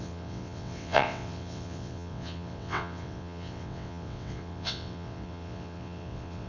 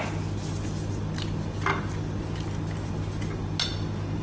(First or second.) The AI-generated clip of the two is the first